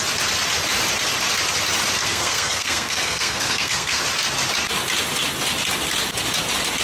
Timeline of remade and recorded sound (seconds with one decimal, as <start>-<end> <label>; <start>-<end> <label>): 0.0-2.0 recorded; 2.0-4.0 remade; 4.0-6.8 recorded